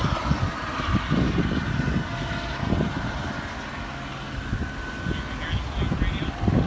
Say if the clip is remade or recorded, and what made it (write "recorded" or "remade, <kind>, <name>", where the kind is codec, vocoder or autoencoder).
recorded